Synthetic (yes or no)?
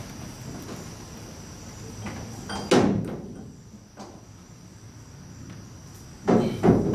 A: no